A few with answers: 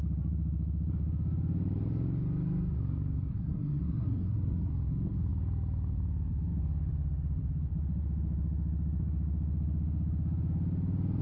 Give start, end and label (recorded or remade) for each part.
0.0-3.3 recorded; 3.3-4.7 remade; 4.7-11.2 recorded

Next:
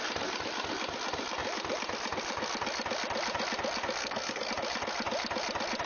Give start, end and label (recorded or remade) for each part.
0.0-4.0 recorded; 4.0-4.5 remade; 4.5-5.9 recorded

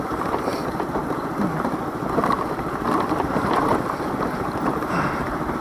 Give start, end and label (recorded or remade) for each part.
0.0-1.0 remade; 1.0-2.4 recorded; 2.4-3.7 remade; 3.7-4.3 recorded; 4.3-5.6 remade

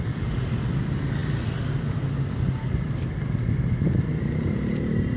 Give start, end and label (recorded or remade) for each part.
0.0-5.2 recorded

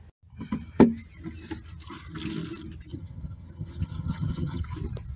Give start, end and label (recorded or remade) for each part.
0.0-2.9 recorded; 2.9-4.6 remade; 4.6-5.2 recorded

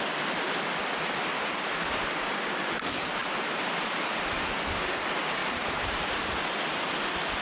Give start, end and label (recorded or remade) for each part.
0.0-5.4 recorded; 5.4-6.3 remade; 6.3-7.4 recorded

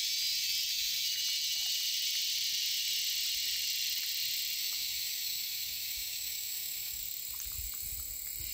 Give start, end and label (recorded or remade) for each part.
0.0-0.7 recorded; 0.7-1.2 remade; 1.2-4.6 recorded; 4.6-7.0 remade; 7.0-8.5 recorded

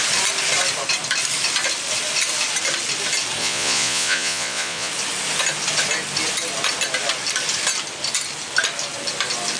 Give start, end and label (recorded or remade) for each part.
0.0-3.4 recorded; 3.4-4.9 remade; 4.9-9.6 recorded